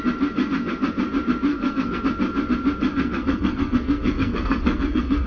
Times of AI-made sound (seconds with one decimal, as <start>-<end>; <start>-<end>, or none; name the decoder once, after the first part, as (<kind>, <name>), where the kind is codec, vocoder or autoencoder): 1.5-2.0 (codec, SNAC); 2.9-5.3